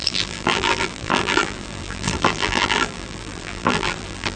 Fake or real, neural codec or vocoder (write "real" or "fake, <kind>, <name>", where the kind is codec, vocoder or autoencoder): fake, vocoder, BigVGAN v2